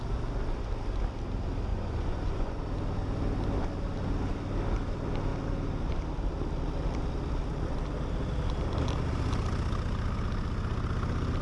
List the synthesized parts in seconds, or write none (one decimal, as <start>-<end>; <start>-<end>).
1.7-2.6